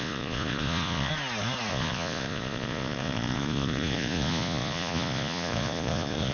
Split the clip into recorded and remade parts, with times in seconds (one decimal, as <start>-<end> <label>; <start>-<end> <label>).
0.0-1.1 remade; 1.1-1.7 recorded; 1.7-6.3 remade